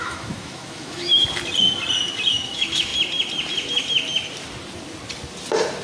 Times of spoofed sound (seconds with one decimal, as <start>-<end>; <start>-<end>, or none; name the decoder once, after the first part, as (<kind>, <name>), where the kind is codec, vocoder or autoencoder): 0.0-1.1 (autoencoder, DAC-VAE); 2.3-2.9